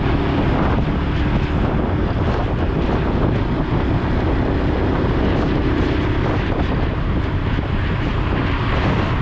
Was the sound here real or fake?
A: real